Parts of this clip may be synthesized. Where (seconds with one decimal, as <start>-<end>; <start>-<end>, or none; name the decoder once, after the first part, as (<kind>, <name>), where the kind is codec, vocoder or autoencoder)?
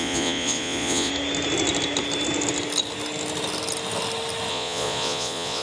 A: 0.0-1.1 (vocoder, Vocos); 4.5-5.6